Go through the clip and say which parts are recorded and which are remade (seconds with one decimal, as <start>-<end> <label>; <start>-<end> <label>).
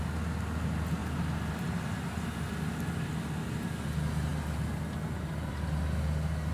0.0-6.5 recorded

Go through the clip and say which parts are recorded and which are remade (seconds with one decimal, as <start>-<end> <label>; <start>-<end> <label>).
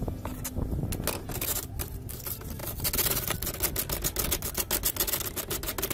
0.0-5.9 recorded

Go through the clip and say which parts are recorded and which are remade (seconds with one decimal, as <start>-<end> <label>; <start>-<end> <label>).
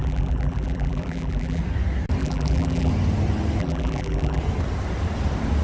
0.0-1.6 remade; 1.6-2.2 recorded; 2.2-2.9 remade; 2.9-3.6 recorded; 3.6-4.4 remade; 4.4-5.6 recorded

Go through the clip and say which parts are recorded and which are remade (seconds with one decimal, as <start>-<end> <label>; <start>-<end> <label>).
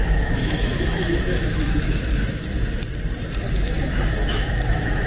0.0-2.8 remade; 2.8-3.5 recorded; 3.5-5.1 remade